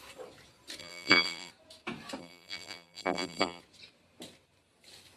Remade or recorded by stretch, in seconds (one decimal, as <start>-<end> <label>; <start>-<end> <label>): 0.0-0.8 recorded; 0.8-1.5 remade; 1.5-2.2 recorded; 2.2-3.6 remade; 3.6-5.2 recorded